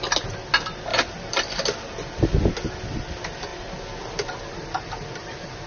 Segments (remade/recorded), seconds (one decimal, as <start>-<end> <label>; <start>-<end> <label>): 0.0-0.9 recorded; 0.9-2.5 remade; 2.5-3.5 recorded; 3.5-5.7 remade

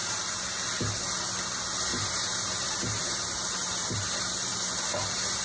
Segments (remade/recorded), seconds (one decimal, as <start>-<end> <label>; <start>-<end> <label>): 0.0-0.5 remade; 0.5-1.9 recorded; 1.9-5.4 remade

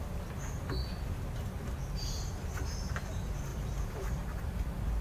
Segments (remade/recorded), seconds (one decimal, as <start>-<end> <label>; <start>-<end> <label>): 0.0-3.5 recorded; 3.5-4.4 remade; 4.4-5.0 recorded

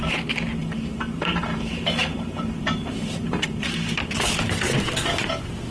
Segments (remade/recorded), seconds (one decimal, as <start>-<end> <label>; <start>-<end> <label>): 0.0-0.6 recorded; 0.6-4.0 remade; 4.0-5.7 recorded

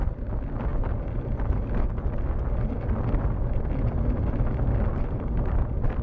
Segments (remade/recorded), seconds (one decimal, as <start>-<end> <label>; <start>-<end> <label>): 0.0-6.0 recorded

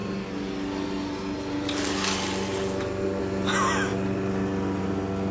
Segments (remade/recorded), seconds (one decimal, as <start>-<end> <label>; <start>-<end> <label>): 0.0-5.3 recorded